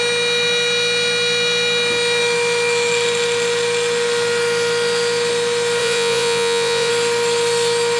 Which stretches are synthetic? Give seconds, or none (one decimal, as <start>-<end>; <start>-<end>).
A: 5.8-6.9